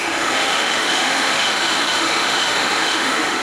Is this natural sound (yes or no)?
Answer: no